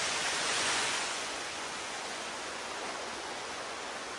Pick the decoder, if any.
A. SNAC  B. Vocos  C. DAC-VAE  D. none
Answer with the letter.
B